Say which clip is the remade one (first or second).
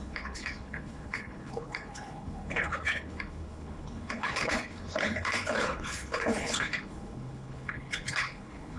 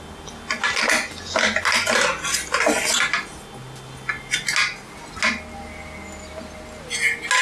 first